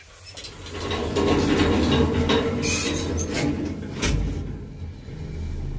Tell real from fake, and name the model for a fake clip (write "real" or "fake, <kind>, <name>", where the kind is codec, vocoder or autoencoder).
real